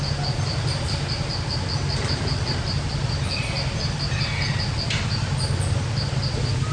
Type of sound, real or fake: real